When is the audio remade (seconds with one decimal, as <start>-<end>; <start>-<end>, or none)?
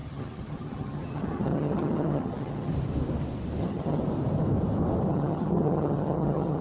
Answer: 0.0-2.7; 3.6-4.0; 5.1-6.6